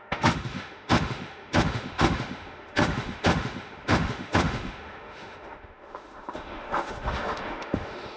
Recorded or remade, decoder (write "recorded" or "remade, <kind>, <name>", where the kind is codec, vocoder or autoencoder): remade, autoencoder, DAC-VAE